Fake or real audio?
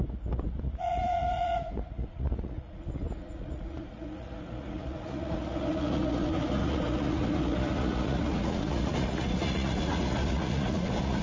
fake